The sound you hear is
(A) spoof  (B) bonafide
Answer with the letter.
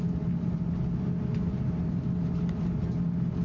B